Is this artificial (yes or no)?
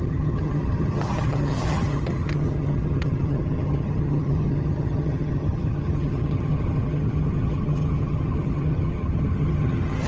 yes